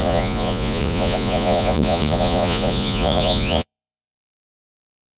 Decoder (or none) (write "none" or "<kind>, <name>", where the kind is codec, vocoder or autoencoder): vocoder, Vocos